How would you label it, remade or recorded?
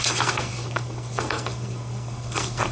remade